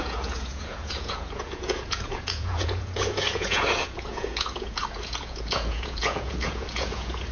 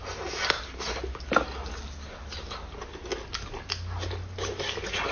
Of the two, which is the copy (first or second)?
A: first